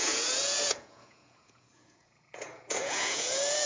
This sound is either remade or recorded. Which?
remade